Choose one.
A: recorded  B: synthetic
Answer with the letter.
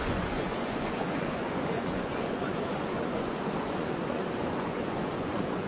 B